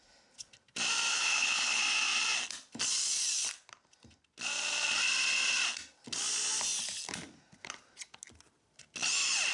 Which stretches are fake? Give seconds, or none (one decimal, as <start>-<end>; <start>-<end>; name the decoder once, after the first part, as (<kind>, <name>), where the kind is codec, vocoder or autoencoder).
1.1-1.8 (codec, HILCodec)